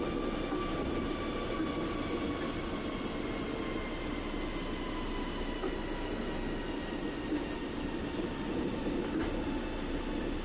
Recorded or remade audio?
recorded